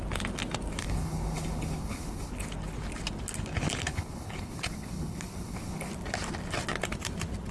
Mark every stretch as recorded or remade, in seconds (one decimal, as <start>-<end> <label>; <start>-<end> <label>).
0.0-0.8 recorded; 0.8-2.3 remade; 2.3-3.9 recorded; 3.9-5.9 remade; 5.9-7.5 recorded